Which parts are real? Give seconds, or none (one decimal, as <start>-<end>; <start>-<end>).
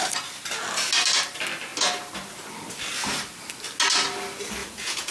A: 0.0-4.6